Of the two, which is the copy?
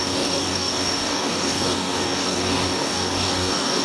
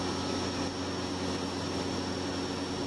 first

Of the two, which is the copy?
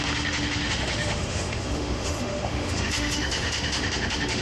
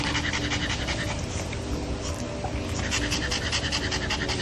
first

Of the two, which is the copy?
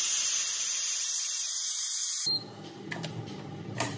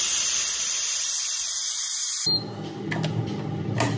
first